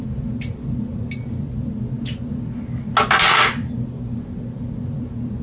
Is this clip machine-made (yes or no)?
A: no